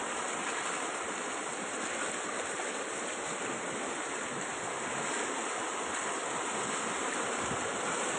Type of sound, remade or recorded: recorded